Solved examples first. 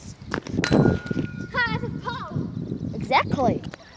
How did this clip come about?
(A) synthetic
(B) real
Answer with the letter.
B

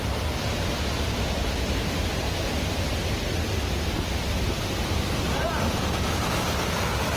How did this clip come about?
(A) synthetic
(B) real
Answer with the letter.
B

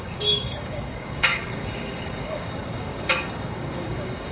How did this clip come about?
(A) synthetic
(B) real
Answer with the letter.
A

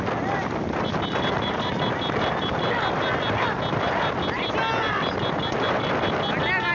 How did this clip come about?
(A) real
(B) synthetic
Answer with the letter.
A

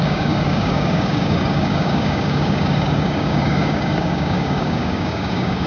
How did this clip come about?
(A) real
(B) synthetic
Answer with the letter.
B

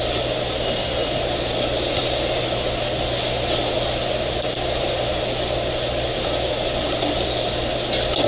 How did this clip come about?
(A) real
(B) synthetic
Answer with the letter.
A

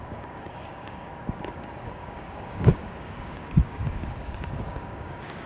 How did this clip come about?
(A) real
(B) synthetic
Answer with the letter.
B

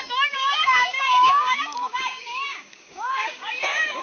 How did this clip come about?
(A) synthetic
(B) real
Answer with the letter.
A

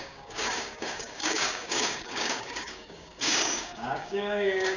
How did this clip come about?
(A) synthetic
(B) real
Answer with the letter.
A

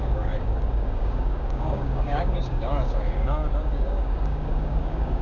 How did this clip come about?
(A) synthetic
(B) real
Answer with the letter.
A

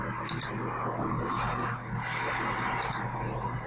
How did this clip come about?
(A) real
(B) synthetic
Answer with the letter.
A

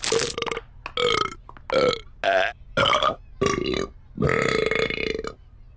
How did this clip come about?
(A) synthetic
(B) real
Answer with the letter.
B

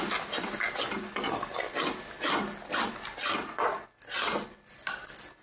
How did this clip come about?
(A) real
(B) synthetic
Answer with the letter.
A